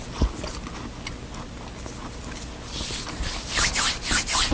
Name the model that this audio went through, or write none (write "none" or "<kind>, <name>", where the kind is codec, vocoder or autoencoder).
none